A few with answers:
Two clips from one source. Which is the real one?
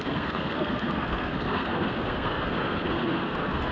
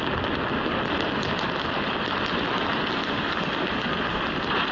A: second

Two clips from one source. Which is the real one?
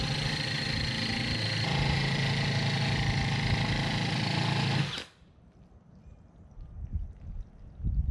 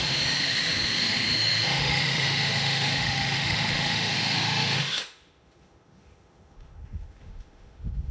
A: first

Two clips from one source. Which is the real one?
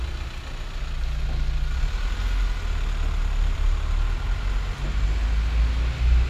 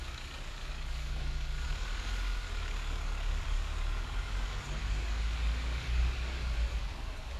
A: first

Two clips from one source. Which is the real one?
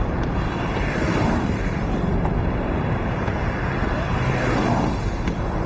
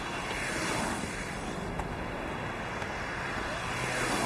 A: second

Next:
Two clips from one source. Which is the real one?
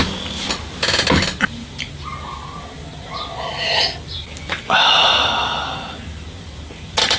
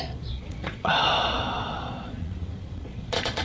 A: first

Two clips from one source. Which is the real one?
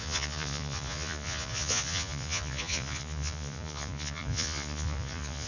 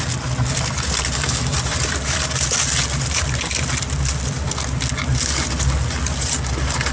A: second